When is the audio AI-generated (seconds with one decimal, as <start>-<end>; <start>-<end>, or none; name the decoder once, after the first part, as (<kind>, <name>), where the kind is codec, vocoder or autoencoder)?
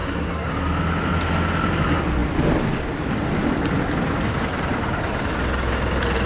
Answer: 0.0-0.5 (codec, SNAC)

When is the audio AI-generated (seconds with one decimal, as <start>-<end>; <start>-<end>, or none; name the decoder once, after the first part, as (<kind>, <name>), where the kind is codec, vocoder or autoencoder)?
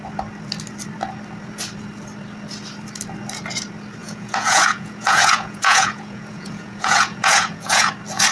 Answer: 4.0-7.9 (vocoder, Vocos)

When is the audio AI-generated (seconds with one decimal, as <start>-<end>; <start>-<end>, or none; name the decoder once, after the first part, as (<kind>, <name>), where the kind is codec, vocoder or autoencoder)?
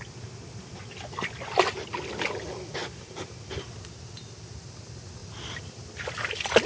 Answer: none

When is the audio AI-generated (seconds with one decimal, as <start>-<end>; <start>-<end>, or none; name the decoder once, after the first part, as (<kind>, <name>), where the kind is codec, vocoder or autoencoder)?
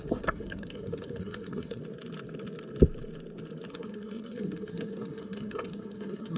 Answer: 0.0-1.8 (codec, SNAC); 3.7-6.4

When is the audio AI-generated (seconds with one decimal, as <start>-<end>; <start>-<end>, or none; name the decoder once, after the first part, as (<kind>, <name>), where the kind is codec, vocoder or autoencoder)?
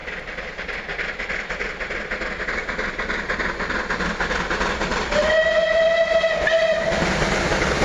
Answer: none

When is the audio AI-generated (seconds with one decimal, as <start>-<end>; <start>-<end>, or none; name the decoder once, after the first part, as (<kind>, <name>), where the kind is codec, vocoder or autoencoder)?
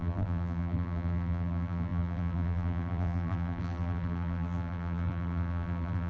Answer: 0.0-6.1 (vocoder, BigVGAN v2)